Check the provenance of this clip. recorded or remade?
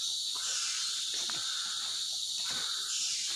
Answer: recorded